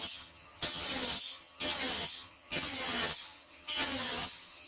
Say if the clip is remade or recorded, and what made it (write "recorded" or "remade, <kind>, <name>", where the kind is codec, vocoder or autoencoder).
remade, vocoder, HiFi-GAN